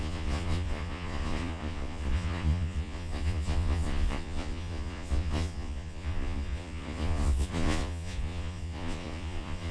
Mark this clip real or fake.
fake